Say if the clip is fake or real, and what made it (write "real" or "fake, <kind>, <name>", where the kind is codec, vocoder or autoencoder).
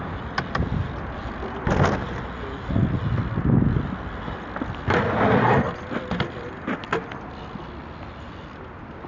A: real